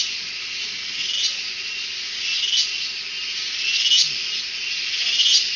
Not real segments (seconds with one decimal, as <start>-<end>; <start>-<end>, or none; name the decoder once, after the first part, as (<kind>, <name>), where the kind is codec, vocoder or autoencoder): none